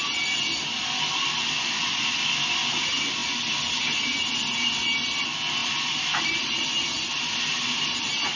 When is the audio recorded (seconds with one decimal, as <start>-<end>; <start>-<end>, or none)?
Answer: 0.0-8.4